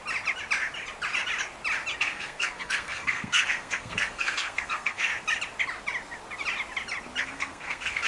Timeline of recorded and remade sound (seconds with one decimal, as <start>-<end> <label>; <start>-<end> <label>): 0.0-2.0 recorded; 2.0-5.1 remade; 5.1-7.2 recorded; 7.2-8.1 remade